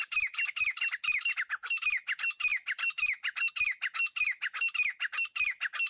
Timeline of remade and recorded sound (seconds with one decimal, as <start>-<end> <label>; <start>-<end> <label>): 0.0-5.9 recorded